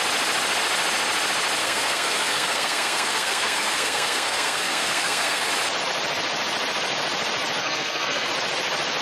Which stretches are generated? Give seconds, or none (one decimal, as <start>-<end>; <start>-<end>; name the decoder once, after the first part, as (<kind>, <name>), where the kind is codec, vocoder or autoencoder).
1.6-5.5 (codec, SNAC); 7.6-8.3